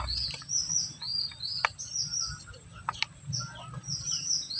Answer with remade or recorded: recorded